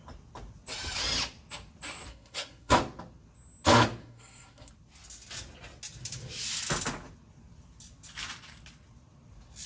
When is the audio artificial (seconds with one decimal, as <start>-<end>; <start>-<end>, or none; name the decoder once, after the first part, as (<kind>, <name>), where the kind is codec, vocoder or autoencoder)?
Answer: 2.1-2.8 (codec, SNAC); 4.0-4.7